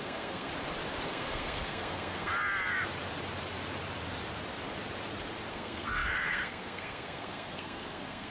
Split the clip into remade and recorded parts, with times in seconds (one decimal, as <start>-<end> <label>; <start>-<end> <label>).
0.0-0.5 remade; 0.5-1.1 recorded; 1.1-2.3 remade; 2.3-5.5 recorded; 5.5-8.3 remade